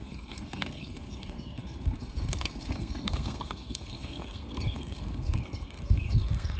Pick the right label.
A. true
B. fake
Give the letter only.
B